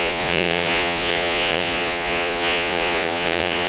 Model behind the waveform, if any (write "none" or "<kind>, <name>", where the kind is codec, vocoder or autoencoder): vocoder, Vocos